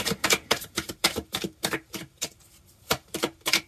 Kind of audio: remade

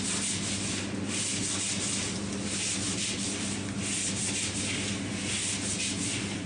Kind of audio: recorded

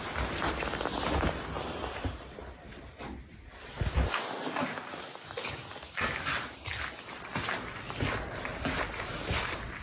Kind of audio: recorded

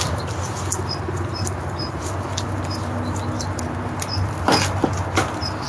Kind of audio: recorded